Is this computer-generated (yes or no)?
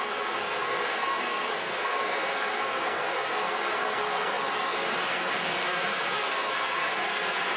yes